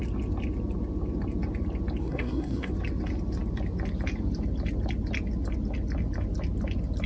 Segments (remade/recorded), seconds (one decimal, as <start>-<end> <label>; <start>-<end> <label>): 0.0-2.0 recorded; 2.0-2.7 remade; 2.7-7.1 recorded